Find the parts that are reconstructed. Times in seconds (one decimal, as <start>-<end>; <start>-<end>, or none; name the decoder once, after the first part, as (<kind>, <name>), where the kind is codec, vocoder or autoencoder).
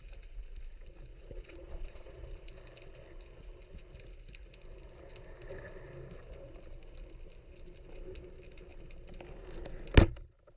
1.1-2.5 (vocoder, Vocos)